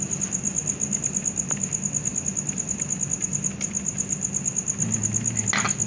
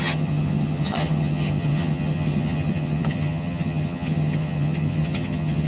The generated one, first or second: second